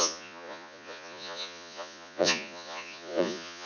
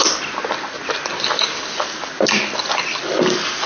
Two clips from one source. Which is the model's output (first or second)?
first